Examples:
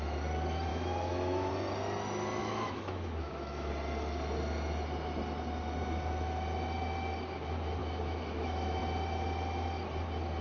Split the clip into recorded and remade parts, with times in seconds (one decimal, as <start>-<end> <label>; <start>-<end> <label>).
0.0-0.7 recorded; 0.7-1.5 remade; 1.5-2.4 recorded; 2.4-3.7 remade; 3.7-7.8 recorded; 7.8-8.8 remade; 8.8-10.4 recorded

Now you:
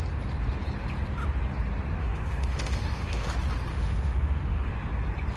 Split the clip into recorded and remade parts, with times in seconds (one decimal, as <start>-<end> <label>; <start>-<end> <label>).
0.0-2.0 recorded; 2.0-3.3 remade; 3.3-3.7 recorded; 3.7-4.7 remade; 4.7-5.4 recorded

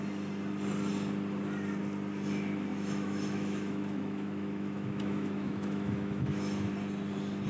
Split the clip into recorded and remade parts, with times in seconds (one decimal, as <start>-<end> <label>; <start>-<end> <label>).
0.0-2.7 recorded; 2.7-6.7 remade; 6.7-7.5 recorded